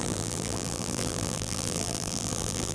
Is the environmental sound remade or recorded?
remade